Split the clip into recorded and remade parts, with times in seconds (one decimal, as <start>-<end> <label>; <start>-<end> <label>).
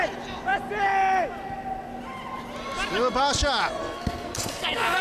0.0-3.8 recorded; 3.8-5.0 remade